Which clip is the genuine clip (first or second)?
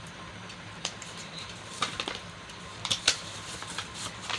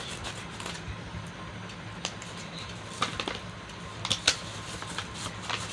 second